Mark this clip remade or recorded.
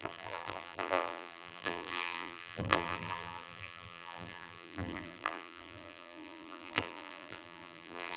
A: remade